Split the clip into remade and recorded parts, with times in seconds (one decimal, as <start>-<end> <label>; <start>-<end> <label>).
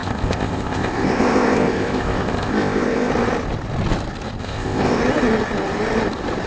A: 0.0-3.1 remade; 3.1-4.4 recorded; 4.4-5.0 remade; 5.0-6.5 recorded